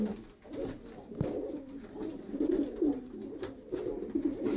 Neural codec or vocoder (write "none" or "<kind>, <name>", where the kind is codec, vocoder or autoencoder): none